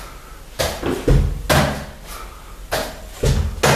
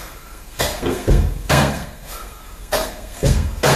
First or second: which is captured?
first